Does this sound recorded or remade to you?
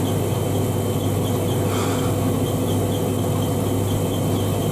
recorded